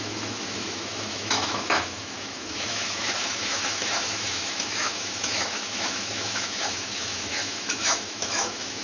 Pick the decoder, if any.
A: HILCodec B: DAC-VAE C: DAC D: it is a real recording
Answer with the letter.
B